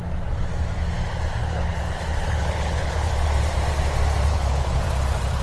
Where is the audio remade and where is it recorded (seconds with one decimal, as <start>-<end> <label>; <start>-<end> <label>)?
0.0-1.4 recorded; 1.4-3.1 remade; 3.1-4.3 recorded; 4.3-4.8 remade; 4.8-5.4 recorded